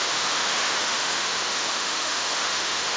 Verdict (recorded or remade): remade